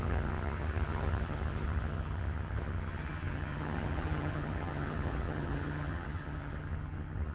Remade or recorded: remade